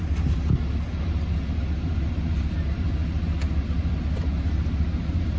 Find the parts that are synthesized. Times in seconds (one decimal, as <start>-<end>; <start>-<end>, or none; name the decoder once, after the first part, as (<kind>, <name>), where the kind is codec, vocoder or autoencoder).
none